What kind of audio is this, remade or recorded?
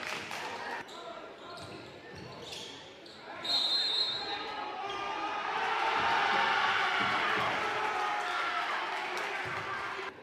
recorded